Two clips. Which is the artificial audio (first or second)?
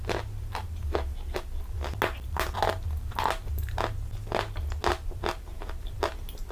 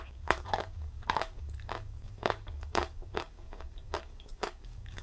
second